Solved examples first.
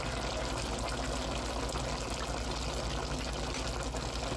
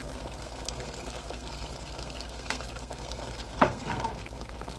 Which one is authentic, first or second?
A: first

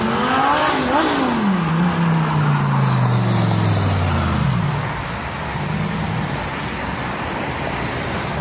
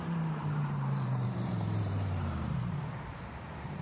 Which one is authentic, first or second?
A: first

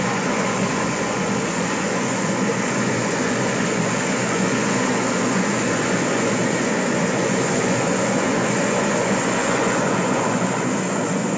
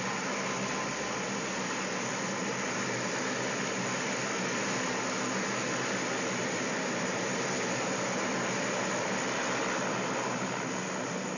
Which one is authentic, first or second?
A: second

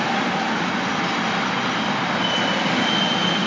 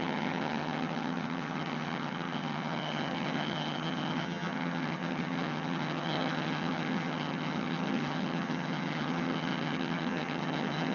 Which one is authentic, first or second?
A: first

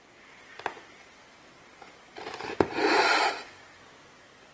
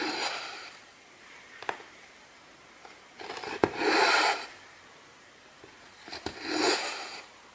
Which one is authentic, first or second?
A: first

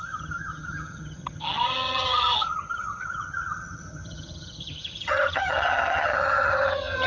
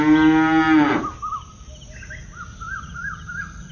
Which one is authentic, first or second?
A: second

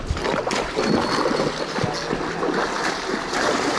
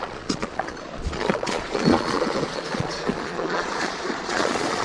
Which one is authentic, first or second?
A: first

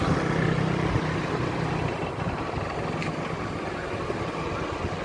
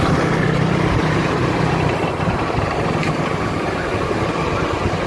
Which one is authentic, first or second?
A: first